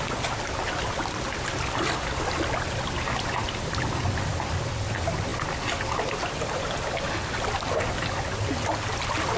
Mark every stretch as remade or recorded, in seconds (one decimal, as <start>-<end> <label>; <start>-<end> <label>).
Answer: 0.0-9.4 recorded